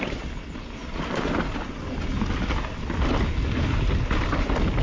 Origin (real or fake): real